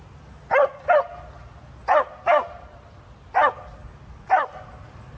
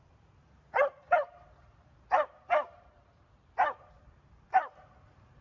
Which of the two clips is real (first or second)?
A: first